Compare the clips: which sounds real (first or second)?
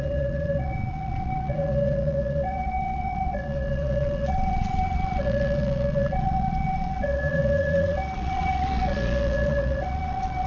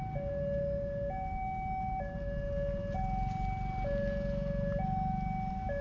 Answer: second